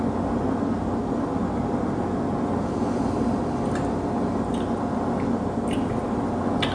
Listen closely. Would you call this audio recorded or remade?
recorded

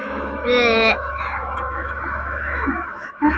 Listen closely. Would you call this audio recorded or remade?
remade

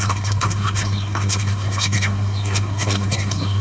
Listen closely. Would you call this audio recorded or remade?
remade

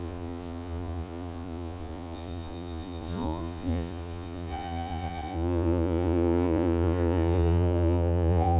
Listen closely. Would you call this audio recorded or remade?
remade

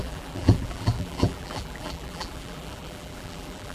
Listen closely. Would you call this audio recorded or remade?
remade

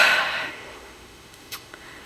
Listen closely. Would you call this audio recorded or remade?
remade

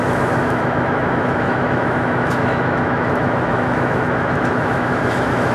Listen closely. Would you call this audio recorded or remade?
remade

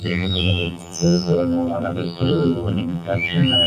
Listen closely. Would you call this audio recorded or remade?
remade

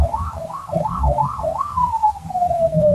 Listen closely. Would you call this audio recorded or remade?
remade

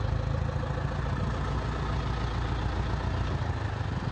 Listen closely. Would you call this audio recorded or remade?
recorded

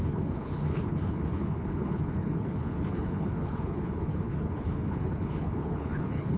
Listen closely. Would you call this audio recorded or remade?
remade